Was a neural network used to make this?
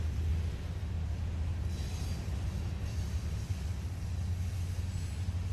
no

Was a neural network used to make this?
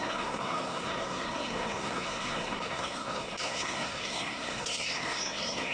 yes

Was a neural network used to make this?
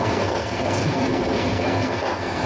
yes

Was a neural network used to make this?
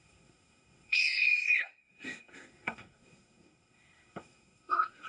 yes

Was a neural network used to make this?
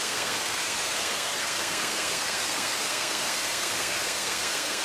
yes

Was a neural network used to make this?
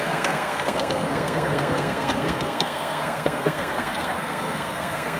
yes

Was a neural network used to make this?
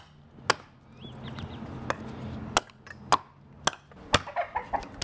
no